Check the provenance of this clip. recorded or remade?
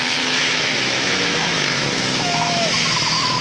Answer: remade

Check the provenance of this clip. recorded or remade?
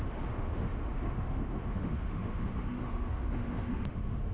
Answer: remade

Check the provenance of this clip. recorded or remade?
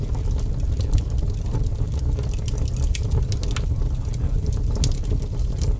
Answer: recorded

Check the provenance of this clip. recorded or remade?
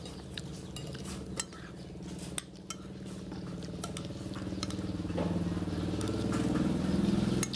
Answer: recorded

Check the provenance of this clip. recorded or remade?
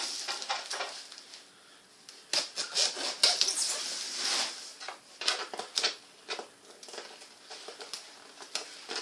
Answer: recorded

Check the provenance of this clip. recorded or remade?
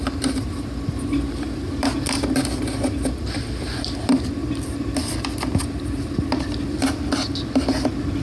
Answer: recorded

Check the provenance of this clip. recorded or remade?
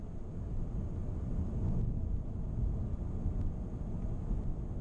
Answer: recorded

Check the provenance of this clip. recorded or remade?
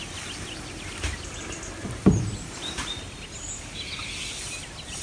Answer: recorded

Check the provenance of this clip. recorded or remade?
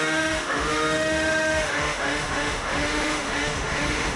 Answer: remade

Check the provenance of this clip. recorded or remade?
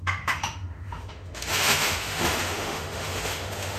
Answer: remade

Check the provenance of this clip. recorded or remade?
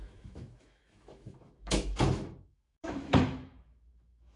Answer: remade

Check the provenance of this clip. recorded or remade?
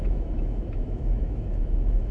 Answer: remade